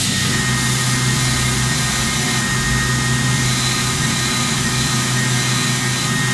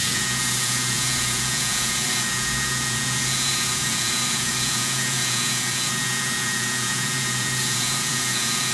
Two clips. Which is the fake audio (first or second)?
second